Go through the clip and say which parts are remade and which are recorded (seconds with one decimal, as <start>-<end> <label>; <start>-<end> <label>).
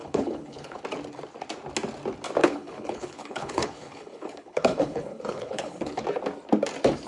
0.0-0.8 remade; 0.8-2.4 recorded; 2.4-6.0 remade; 6.0-7.1 recorded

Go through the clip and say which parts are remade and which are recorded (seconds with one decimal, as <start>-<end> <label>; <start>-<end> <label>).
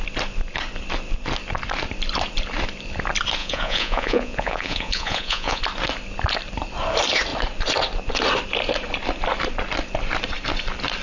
0.0-3.4 recorded; 3.4-5.6 remade; 5.6-11.0 recorded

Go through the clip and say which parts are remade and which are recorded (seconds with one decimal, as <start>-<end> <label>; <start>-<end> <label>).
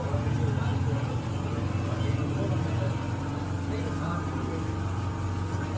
0.0-5.8 recorded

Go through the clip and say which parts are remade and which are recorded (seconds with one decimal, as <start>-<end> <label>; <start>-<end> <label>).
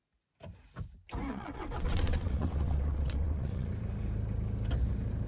0.0-1.3 recorded; 1.3-3.7 remade; 3.7-5.3 recorded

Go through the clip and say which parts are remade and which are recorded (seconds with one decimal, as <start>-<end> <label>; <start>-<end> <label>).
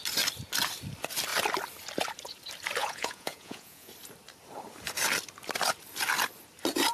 0.0-2.8 recorded; 2.8-3.9 remade; 3.9-6.9 recorded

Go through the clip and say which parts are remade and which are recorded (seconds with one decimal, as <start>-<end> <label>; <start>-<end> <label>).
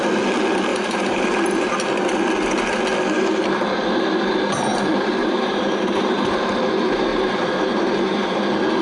0.0-0.7 recorded; 0.7-1.7 remade; 1.7-4.7 recorded; 4.7-6.5 remade; 6.5-7.1 recorded; 7.1-8.4 remade; 8.4-8.8 recorded